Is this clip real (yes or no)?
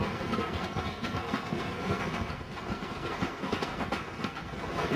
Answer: no